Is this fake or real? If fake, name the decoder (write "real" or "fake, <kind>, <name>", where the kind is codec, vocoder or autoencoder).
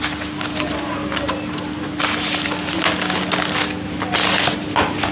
real